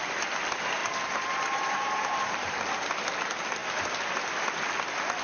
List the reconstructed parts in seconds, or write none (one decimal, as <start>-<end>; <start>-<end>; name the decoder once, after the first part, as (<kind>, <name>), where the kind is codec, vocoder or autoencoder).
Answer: 0.8-2.6 (vocoder, BigVGAN v2)